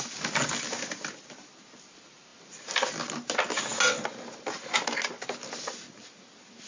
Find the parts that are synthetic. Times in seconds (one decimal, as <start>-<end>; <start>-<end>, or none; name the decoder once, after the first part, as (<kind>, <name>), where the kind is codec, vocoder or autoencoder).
none